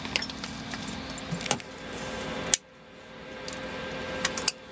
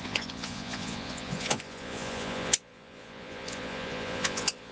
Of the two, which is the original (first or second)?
first